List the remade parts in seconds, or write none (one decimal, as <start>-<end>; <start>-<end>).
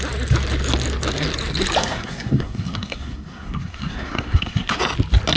1.8-4.8